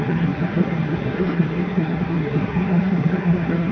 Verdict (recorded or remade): remade